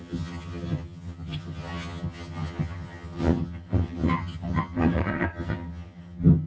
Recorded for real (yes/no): no